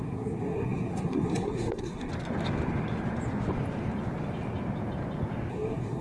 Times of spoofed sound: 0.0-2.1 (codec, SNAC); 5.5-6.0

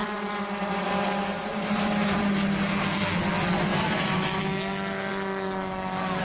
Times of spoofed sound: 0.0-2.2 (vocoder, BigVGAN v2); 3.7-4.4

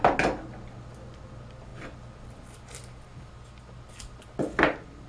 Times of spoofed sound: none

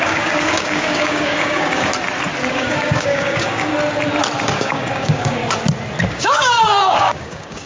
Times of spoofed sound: 0.0-1.9 (codec, DAC); 2.5-3.7; 4.4-5.4; 6.1-7.7

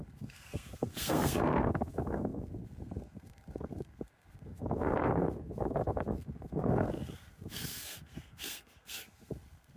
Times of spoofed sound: 0.0-9.8 (codec, SNAC)